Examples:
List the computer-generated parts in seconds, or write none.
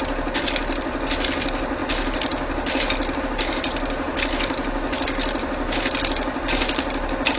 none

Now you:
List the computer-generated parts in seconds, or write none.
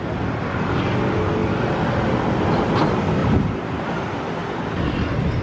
3.2-3.9 (vocoder, BigVGAN v2)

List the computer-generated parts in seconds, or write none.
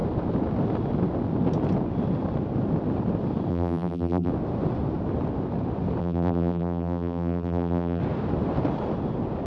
3.5-4.3 (vocoder, BigVGAN v2); 6.0-8.0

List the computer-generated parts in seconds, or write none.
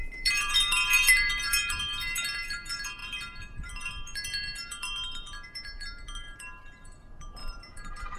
0.0-8.2 (vocoder, BigVGAN v2)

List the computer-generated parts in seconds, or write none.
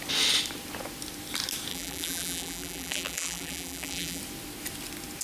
1.7-4.2 (vocoder, BigVGAN v2)